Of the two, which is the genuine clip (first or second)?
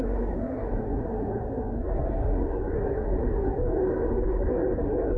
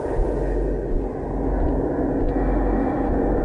second